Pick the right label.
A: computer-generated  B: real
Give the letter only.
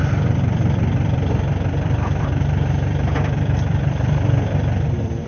A